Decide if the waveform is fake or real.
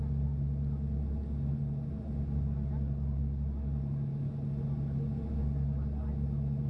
real